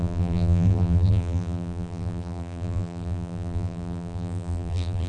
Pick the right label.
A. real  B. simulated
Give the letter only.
B